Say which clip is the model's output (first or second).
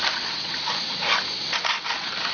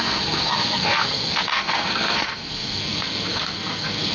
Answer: second